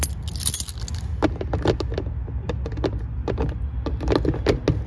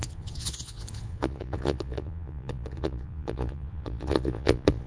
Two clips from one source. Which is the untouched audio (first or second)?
first